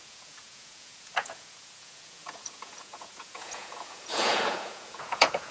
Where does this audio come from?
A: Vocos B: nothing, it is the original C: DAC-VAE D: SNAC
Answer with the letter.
A